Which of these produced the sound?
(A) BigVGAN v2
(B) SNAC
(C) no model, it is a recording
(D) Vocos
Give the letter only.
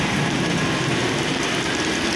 C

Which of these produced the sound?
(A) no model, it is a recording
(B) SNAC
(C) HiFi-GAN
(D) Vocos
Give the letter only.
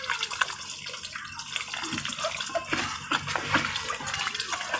A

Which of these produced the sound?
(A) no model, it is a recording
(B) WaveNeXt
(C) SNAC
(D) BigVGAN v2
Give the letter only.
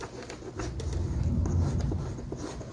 A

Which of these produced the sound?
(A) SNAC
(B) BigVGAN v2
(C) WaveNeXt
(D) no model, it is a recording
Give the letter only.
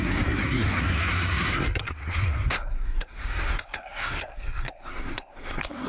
A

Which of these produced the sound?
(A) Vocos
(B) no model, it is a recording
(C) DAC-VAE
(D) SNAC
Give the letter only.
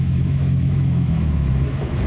C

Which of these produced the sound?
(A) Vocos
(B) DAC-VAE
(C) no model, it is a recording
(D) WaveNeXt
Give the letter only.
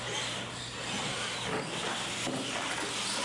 C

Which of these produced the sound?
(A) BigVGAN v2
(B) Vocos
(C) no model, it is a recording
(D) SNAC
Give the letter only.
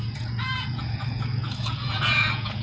B